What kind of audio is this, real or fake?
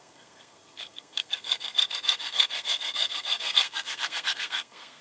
fake